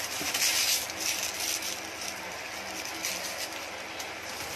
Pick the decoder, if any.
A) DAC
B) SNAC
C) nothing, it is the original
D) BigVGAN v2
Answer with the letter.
C